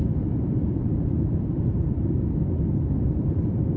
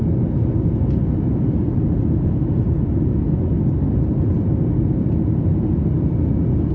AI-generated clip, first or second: first